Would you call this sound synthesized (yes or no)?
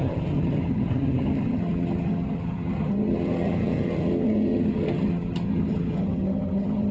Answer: yes